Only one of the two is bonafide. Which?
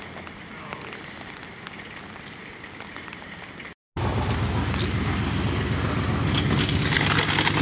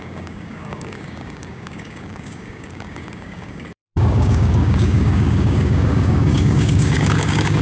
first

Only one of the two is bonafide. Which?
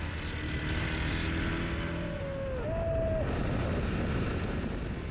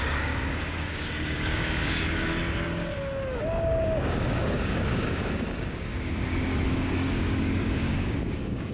first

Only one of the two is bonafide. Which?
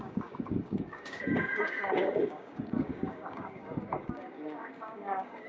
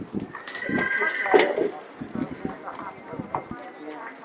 second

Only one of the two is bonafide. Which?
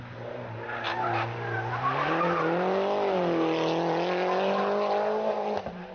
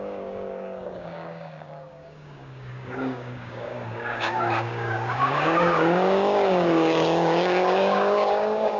first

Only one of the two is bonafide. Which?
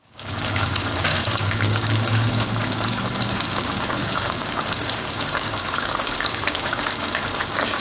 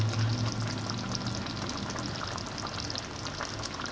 second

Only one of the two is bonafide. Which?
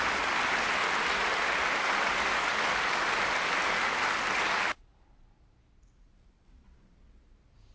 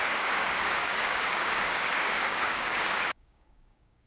first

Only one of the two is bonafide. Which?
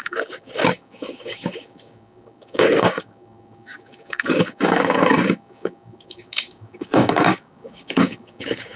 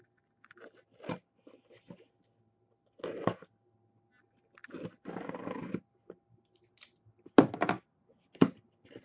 second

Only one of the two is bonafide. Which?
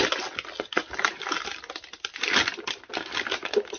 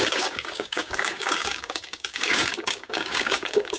first